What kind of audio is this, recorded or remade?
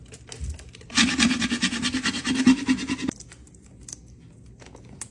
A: recorded